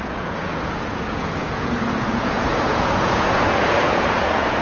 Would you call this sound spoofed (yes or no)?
yes